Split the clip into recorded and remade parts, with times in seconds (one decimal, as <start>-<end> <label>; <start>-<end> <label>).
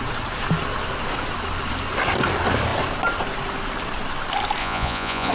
0.0-4.6 recorded; 4.6-5.3 remade